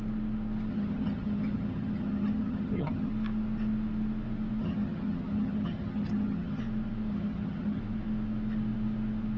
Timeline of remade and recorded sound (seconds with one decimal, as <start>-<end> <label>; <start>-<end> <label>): 0.0-0.7 recorded; 0.7-3.1 remade; 3.1-4.6 recorded; 4.6-6.6 remade; 6.6-7.1 recorded; 7.1-7.8 remade; 7.8-9.4 recorded